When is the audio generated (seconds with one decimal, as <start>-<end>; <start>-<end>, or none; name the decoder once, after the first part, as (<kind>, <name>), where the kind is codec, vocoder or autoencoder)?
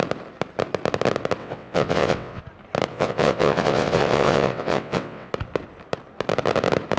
1.4-2.4 (vocoder, WaveNeXt); 2.9-5.3